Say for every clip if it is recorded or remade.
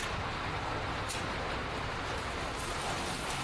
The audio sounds recorded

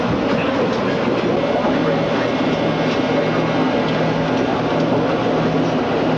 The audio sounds recorded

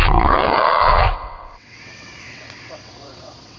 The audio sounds remade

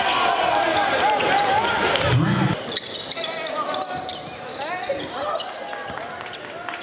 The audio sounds recorded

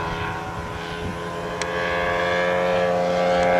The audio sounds recorded